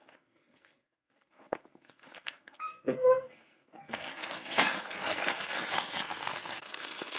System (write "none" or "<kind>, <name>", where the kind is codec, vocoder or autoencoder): codec, SNAC